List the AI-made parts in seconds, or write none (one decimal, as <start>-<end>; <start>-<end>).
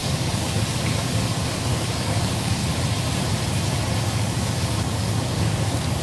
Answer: 0.0-2.6; 4.0-6.0